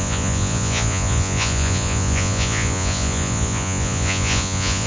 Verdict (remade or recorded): remade